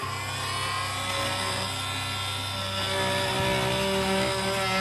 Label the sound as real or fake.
real